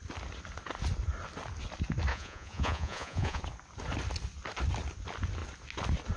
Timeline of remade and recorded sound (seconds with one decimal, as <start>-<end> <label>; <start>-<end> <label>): 0.0-2.1 recorded; 2.1-3.4 remade; 3.4-6.2 recorded